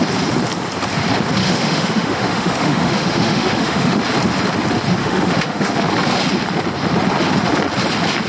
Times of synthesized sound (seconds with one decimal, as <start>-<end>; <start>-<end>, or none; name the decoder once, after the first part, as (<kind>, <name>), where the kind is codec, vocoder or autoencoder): 1.4-4.0 (autoencoder, DAC-VAE); 5.0-5.7